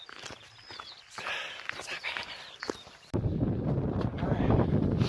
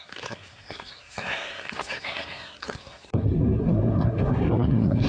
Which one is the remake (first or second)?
second